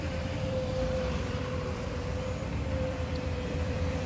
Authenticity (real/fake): fake